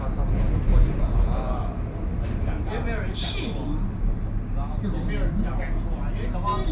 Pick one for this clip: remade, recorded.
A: recorded